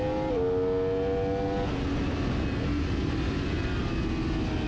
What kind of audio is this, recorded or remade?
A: recorded